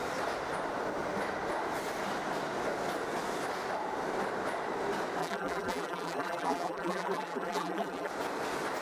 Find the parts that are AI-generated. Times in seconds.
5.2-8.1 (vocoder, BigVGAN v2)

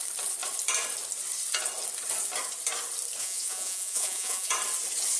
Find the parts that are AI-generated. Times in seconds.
3.2-4.5 (vocoder, Vocos)

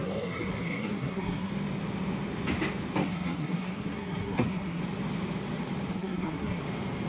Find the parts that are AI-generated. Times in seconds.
0.0-1.5 (codec, SNAC); 3.0-4.8; 5.9-6.6